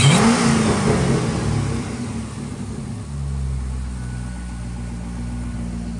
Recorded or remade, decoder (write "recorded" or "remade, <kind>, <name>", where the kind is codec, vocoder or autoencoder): recorded